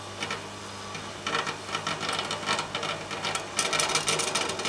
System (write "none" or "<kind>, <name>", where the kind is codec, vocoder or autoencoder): none